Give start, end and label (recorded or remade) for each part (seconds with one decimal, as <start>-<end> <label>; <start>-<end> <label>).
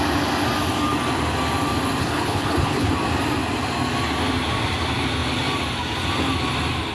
0.0-2.0 recorded; 2.0-2.9 remade; 2.9-6.9 recorded